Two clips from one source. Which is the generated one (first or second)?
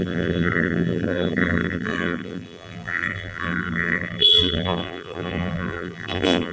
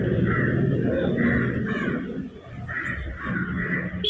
first